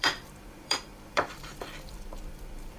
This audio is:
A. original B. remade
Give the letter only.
B